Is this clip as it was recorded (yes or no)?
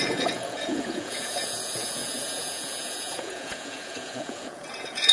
no